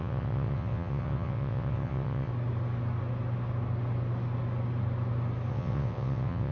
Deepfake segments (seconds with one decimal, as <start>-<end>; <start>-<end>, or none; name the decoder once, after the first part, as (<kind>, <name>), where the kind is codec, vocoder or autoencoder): 0.0-2.3 (vocoder, WaveNeXt); 5.5-6.5